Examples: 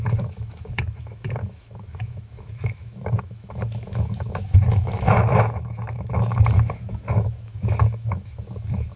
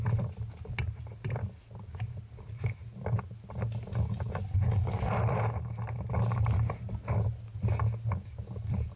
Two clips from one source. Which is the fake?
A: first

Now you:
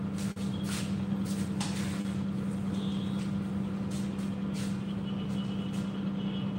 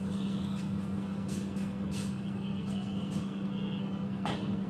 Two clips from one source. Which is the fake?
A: second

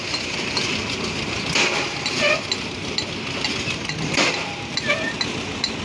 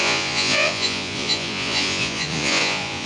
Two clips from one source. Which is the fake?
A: second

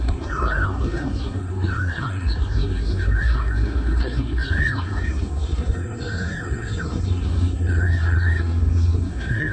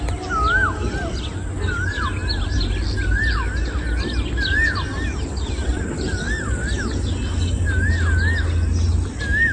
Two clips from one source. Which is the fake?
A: first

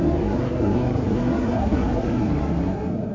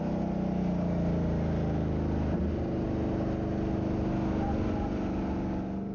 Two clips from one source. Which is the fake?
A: first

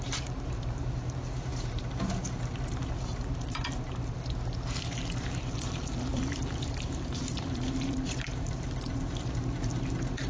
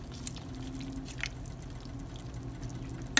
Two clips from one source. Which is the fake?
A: first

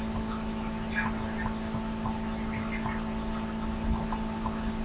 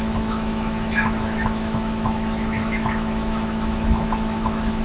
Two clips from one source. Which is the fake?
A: second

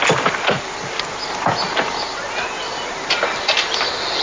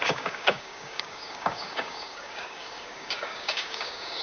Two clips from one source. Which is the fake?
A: second